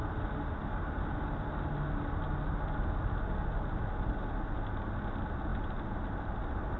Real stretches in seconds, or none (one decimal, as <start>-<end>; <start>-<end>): 0.0-6.8